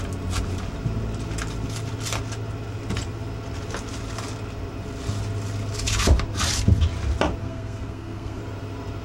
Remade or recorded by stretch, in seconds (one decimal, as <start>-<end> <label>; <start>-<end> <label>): 0.0-7.4 recorded; 7.4-8.4 remade; 8.4-9.0 recorded